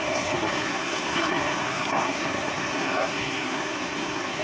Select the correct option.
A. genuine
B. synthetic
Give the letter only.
B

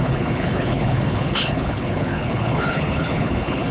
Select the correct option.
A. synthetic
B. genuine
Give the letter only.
A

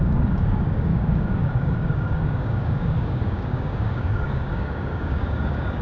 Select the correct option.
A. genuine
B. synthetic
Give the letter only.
B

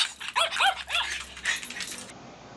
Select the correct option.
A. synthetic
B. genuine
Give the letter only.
B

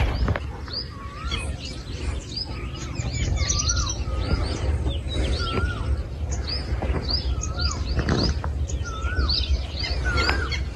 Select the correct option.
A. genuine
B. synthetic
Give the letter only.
A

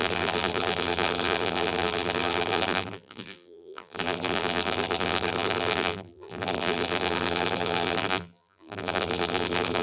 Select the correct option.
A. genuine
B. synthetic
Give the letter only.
B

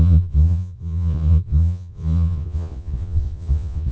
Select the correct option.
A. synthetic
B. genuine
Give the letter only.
A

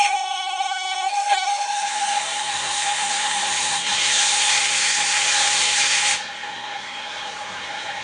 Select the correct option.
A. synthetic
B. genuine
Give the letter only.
A